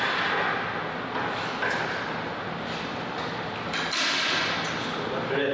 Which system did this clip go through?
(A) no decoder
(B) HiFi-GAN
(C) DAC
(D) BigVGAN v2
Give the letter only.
A